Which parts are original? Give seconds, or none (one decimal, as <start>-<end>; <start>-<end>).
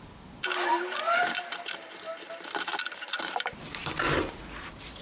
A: 0.7-3.2